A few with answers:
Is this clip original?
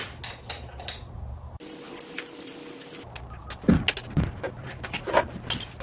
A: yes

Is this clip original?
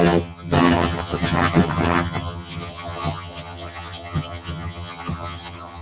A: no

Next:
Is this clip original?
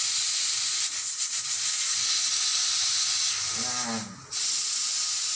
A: yes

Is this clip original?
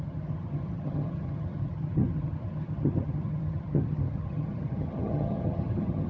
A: no